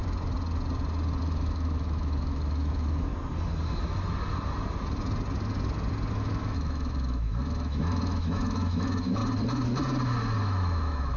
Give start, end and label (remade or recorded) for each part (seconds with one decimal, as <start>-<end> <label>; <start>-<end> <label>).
0.0-1.2 recorded; 1.2-3.1 remade; 3.1-6.1 recorded; 6.1-9.2 remade; 9.2-10.4 recorded; 10.4-11.2 remade